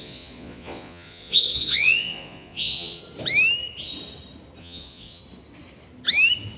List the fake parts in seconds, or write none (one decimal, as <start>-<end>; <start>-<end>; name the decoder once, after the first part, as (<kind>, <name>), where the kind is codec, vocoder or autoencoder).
0.0-3.0 (vocoder, Vocos); 4.6-5.2